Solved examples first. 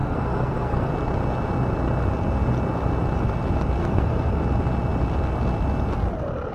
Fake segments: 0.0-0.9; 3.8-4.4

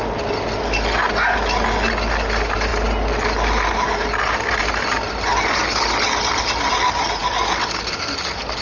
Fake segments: none

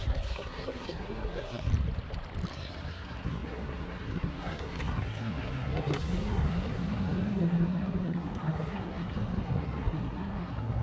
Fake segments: 0.0-1.7; 2.5-10.8

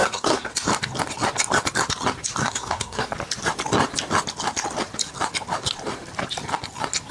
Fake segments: 0.0-0.5; 2.4-3.1

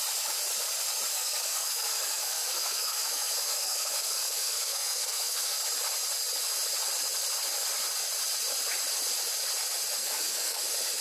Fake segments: 1.1-5.6; 10.0-10.6